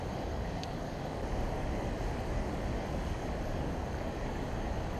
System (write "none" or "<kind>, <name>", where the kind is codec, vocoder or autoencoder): codec, DAC